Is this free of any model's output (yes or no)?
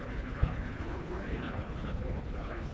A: no